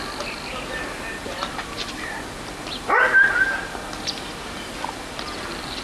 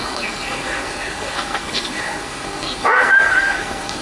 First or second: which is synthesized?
second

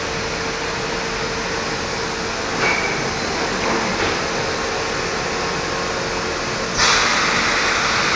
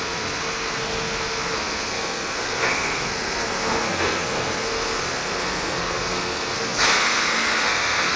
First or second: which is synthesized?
second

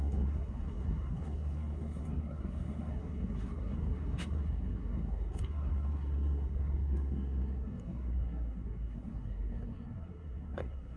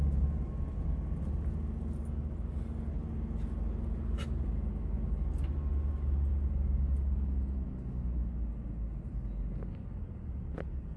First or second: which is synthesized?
first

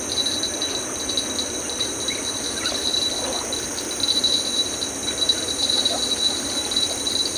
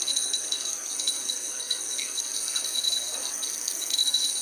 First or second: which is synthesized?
second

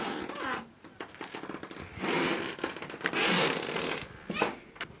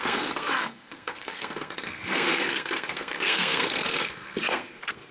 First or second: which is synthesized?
second